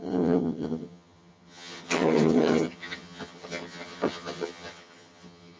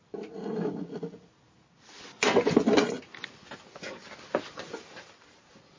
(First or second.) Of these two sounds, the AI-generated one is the first